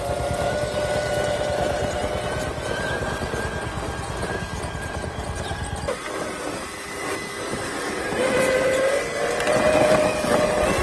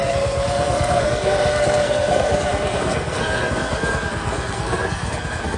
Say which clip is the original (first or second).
first